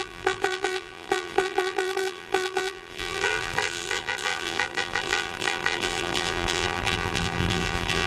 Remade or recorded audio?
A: remade